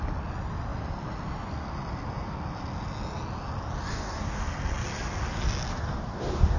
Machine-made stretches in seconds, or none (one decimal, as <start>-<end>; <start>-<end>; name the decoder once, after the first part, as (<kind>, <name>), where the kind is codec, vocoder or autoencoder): 3.9-4.4 (codec, DAC); 5.7-6.6